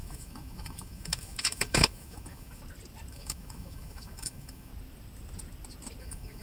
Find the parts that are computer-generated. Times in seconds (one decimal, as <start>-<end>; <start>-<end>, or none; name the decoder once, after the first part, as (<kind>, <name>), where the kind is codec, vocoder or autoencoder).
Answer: 0.0-2.6 (autoencoder, DAC-VAE); 3.1-4.7; 6.0-6.4